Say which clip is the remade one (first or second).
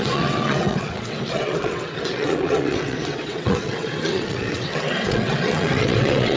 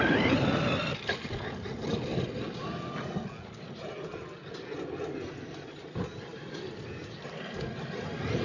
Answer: first